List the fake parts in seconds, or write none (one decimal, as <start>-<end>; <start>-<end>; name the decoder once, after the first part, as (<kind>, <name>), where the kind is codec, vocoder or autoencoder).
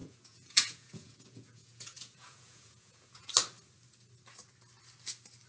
0.0-3.3 (vocoder, Vocos)